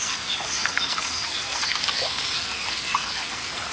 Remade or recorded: remade